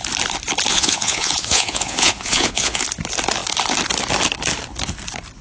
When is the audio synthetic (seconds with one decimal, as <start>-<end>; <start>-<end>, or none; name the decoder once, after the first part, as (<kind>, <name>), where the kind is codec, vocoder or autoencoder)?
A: 0.7-2.8 (vocoder, Vocos)